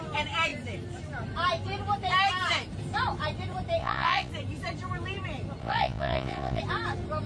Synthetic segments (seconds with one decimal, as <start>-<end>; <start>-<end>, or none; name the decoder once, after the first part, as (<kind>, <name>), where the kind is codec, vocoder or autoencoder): 3.8-4.3 (vocoder, Vocos); 5.6-6.6